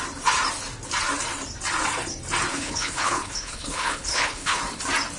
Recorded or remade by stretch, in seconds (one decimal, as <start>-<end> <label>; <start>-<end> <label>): 0.0-2.5 recorded; 2.5-4.6 remade; 4.6-5.2 recorded